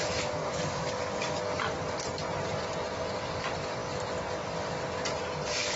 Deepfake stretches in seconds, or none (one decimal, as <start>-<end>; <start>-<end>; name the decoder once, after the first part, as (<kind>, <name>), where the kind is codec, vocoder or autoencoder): 0.4-1.4 (codec, DAC)